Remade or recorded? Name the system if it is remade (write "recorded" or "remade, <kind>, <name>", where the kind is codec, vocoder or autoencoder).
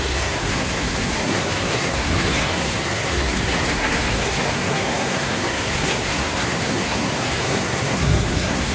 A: remade, codec, SNAC